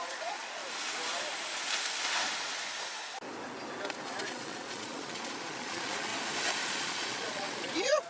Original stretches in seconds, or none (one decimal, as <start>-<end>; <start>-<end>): 0.6-4.2; 6.1-6.7